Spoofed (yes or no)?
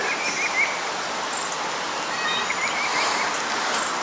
no